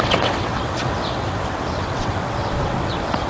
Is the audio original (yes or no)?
no